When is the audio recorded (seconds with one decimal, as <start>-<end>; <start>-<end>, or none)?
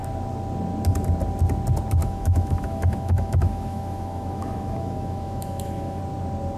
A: 0.0-2.0; 6.0-6.6